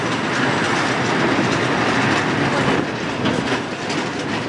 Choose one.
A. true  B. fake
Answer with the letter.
A